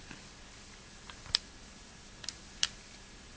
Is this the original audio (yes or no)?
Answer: yes